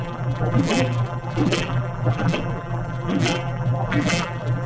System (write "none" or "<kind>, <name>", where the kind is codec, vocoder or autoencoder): vocoder, BigVGAN v2